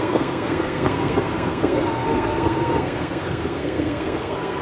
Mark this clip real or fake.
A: fake